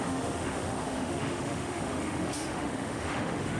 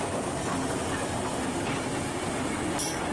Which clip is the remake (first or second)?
first